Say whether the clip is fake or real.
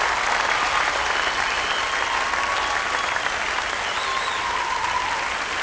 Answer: real